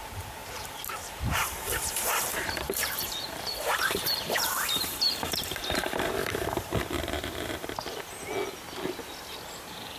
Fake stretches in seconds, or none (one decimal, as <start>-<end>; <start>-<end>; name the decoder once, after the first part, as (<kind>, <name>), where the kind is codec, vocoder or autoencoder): 0.0-8.3 (vocoder, BigVGAN v2); 9.5-10.0